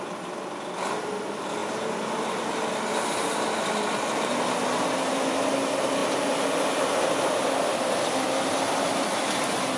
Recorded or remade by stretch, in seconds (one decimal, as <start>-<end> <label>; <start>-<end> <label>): 0.0-9.8 recorded